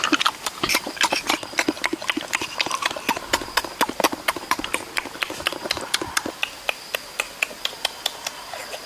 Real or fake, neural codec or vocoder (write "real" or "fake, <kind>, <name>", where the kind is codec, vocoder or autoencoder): real